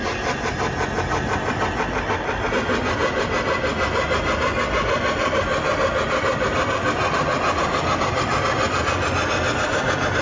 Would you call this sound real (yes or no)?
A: yes